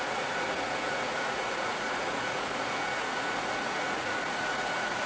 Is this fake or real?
fake